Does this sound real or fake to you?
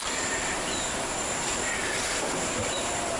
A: real